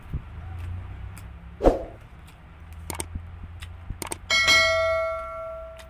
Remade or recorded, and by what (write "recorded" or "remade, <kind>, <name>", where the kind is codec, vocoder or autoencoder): recorded